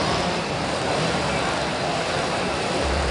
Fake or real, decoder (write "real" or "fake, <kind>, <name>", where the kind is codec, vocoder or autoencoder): fake, vocoder, BigVGAN v2